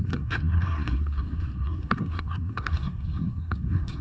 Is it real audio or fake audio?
fake